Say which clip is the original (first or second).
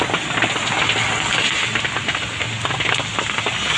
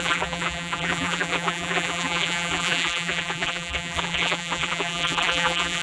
first